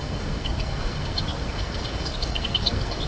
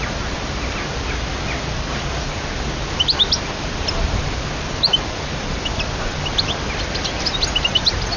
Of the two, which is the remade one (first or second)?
first